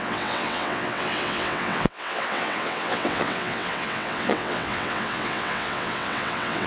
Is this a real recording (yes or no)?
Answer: no